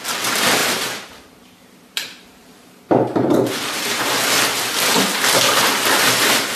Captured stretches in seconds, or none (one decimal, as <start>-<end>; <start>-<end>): 0.0-0.6; 4.0-6.6